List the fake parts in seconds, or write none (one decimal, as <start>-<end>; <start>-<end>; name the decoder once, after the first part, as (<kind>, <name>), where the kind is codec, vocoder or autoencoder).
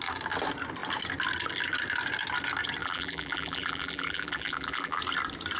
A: 2.8-5.0 (vocoder, BigVGAN v2)